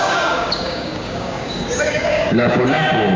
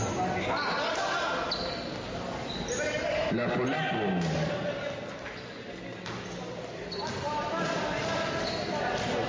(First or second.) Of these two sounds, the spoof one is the first